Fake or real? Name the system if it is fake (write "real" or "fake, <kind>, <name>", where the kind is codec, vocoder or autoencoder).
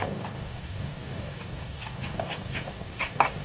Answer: fake, codec, DAC